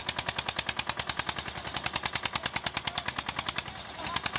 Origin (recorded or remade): recorded